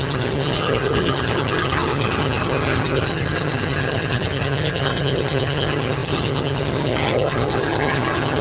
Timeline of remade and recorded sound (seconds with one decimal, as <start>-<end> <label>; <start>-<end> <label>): 0.0-8.4 remade